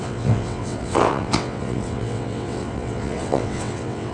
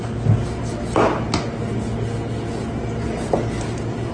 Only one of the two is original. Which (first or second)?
second